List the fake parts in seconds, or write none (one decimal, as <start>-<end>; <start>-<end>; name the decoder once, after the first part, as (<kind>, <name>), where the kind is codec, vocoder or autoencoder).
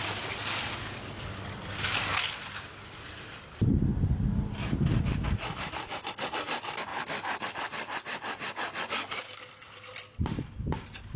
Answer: none